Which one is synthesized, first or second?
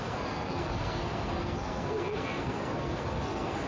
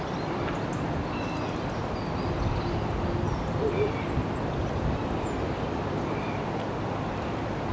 first